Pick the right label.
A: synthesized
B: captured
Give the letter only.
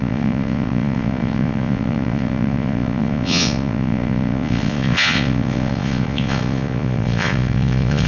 A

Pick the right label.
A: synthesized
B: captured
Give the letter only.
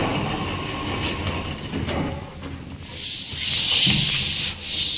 B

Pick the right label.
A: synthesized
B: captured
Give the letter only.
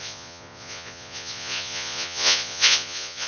A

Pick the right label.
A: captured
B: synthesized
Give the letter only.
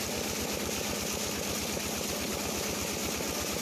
A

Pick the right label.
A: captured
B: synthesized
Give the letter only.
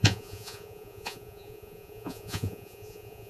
B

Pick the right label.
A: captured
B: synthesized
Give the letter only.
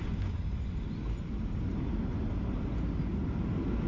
A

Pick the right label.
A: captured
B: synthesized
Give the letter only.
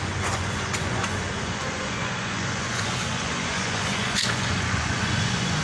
B